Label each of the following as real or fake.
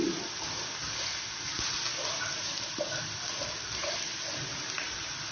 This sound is real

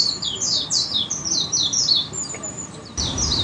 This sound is fake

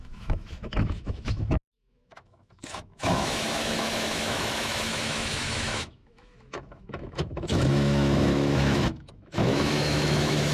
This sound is fake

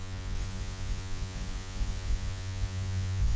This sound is fake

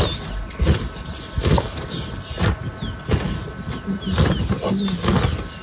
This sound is real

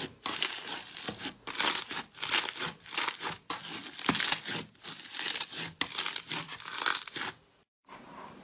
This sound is real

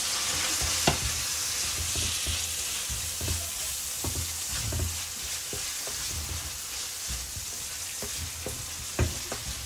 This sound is real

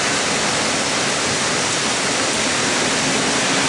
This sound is real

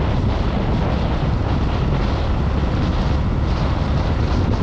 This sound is real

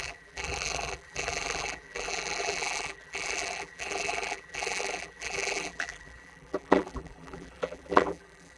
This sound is fake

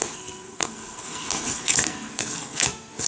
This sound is fake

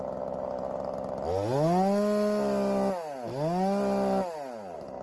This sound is real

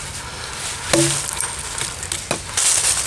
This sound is real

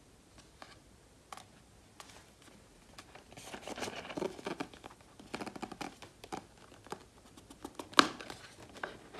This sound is real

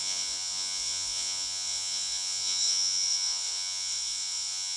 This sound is fake